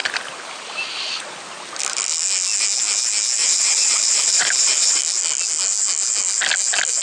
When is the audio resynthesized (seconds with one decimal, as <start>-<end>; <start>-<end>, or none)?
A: 3.4-5.0